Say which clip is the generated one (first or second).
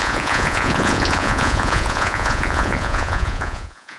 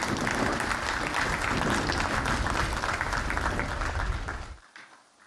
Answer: first